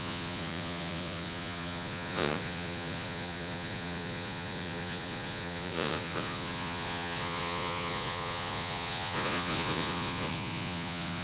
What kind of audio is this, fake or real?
fake